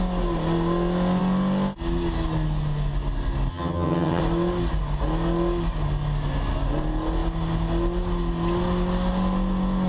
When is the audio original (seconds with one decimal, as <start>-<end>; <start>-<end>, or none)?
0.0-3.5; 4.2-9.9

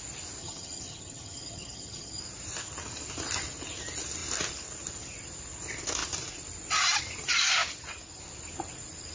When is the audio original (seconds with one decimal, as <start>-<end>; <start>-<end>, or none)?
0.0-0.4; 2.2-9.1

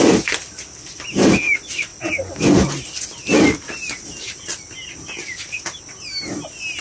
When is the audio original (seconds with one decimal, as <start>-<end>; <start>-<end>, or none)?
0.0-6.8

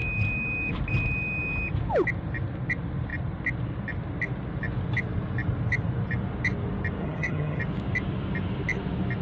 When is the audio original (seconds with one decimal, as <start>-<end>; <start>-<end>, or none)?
0.0-7.0; 7.6-9.2